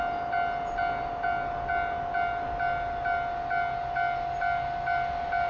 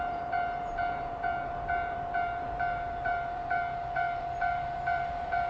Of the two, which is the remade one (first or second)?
second